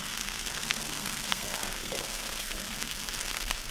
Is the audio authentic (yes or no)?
no